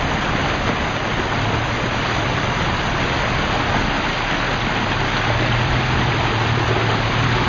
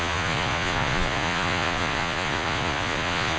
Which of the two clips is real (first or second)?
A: first